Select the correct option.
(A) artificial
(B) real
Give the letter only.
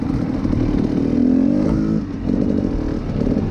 B